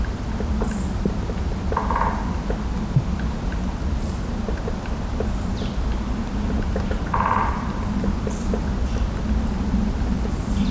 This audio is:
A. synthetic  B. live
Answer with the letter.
A